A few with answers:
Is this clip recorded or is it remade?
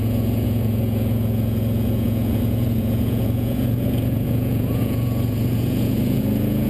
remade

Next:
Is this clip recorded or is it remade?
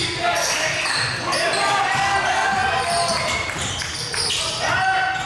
recorded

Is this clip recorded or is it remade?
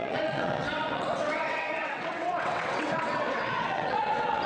remade